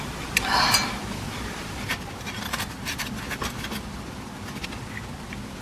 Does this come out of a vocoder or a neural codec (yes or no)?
no